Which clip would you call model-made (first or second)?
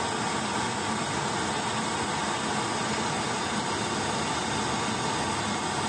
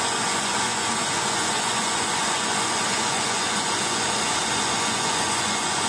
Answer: second